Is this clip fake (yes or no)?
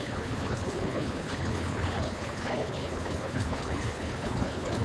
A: yes